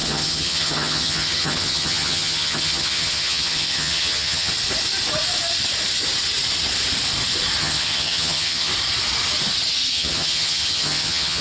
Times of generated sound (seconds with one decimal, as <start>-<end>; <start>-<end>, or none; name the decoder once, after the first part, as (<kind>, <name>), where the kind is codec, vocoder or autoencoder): 0.0-4.5 (vocoder, HiFi-GAN); 7.6-8.7; 9.9-11.4

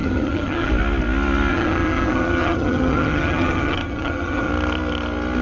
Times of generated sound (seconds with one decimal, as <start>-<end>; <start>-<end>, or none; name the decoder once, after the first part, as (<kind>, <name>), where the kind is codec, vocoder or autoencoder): 0.0-0.7 (vocoder, HiFi-GAN); 1.5-4.5

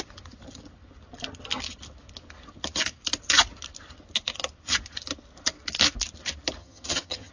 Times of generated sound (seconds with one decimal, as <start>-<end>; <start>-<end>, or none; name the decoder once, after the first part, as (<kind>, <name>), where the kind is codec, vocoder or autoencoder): 6.6-7.3 (vocoder, HiFi-GAN)

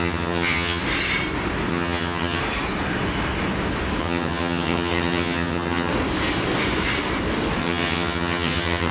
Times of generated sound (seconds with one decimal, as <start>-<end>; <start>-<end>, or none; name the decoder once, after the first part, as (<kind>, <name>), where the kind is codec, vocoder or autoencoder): 0.0-0.8 (vocoder, HiFi-GAN); 1.7-2.4; 4.0-5.9; 7.6-8.9

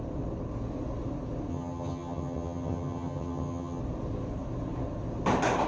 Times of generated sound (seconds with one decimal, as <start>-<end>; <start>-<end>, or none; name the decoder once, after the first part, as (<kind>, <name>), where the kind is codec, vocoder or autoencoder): 1.5-3.8 (vocoder, HiFi-GAN)

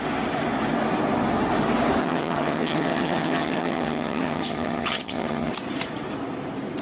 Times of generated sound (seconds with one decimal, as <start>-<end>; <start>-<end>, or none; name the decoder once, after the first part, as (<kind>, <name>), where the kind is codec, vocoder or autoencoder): 2.0-5.5 (vocoder, HiFi-GAN)

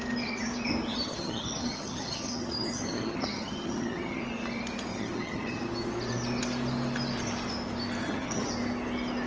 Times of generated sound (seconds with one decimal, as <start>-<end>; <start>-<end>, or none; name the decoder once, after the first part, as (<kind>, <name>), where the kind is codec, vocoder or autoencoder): 0.9-4.2 (vocoder, HiFi-GAN); 4.9-5.6; 8.0-8.5

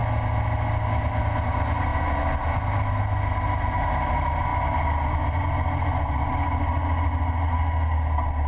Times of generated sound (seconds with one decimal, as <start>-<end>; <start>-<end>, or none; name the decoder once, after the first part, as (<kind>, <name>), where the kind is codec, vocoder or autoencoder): none